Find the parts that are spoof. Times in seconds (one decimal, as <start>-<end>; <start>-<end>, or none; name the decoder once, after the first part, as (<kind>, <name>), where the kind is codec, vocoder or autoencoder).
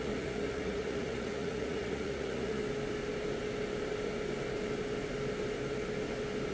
0.0-2.6 (vocoder, Vocos)